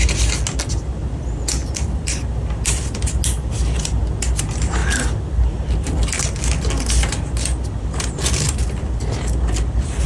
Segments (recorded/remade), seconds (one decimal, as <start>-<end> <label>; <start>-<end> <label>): 0.0-10.1 recorded